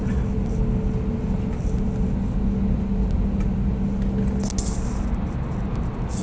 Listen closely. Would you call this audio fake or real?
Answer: real